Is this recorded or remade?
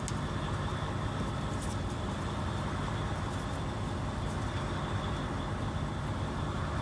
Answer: recorded